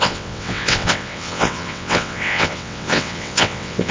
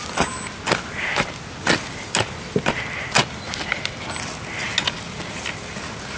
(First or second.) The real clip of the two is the second